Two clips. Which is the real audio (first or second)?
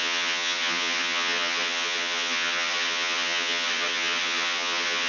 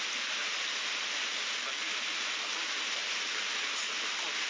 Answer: second